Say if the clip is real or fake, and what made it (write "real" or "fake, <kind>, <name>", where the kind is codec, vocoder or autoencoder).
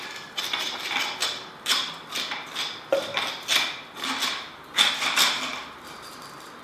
real